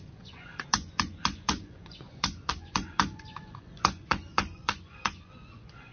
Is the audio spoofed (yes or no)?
yes